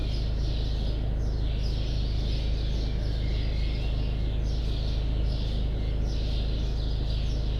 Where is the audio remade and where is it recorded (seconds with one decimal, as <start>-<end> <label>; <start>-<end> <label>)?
0.0-7.6 recorded